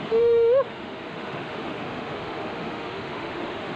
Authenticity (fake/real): fake